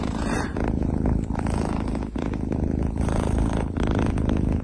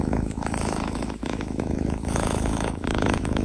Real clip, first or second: first